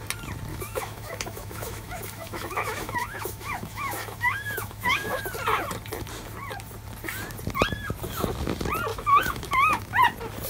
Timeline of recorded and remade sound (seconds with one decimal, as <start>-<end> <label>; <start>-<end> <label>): 0.0-0.5 recorded; 0.5-5.2 remade; 5.2-8.9 recorded; 8.9-10.0 remade; 10.0-10.5 recorded